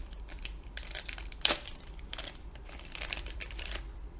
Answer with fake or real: fake